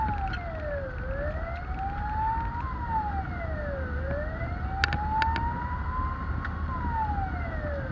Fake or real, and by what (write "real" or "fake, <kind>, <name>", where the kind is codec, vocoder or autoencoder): real